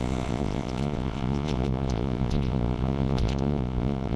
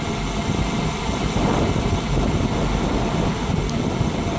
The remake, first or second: first